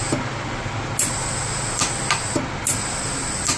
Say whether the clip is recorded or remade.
recorded